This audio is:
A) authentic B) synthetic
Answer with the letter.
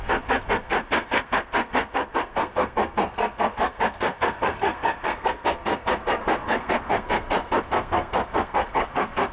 B